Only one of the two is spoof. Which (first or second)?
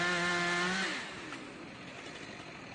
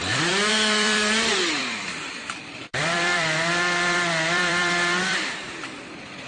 second